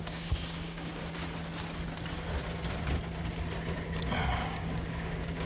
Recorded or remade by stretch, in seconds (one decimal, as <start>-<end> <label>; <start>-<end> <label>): 0.0-1.0 remade; 1.0-4.3 recorded; 4.3-5.5 remade